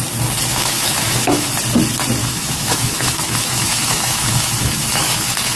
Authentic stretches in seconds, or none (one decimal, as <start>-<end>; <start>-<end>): 0.0-0.5; 1.5-2.2

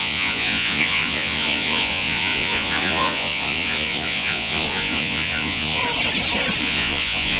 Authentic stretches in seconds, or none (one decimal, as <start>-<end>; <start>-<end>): 5.8-6.6